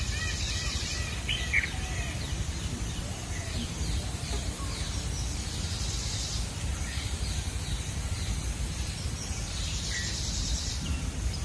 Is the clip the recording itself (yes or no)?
no